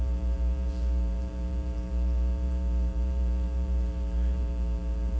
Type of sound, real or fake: fake